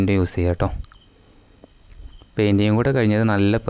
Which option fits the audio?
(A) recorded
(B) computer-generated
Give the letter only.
A